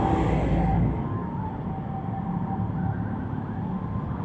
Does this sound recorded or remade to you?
recorded